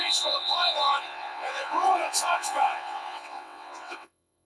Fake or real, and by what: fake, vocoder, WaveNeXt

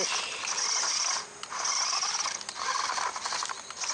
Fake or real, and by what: real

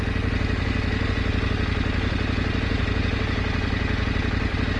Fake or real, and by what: real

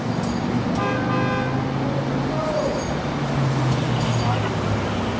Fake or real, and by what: real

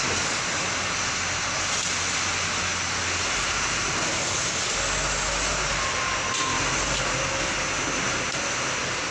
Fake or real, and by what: real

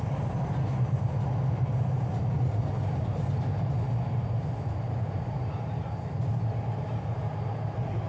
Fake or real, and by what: real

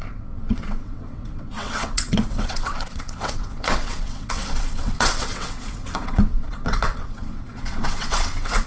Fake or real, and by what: fake, vocoder, WaveNeXt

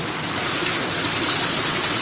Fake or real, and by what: real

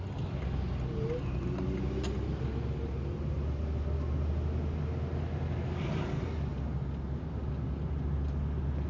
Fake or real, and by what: real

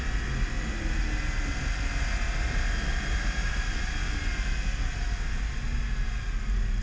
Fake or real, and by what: real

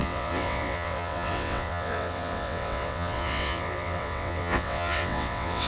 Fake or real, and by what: fake, vocoder, WaveNeXt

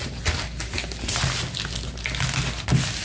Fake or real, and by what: real